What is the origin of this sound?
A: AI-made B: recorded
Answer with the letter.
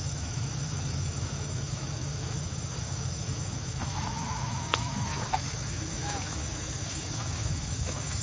A